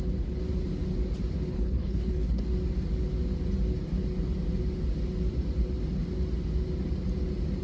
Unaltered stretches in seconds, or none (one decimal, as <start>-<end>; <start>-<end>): 0.0-1.5; 2.4-7.6